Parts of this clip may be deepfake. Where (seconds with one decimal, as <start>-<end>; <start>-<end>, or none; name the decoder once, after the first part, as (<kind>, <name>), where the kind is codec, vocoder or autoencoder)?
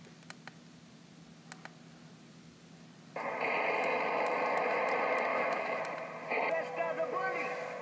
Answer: 5.3-5.8 (autoencoder, DAC-VAE)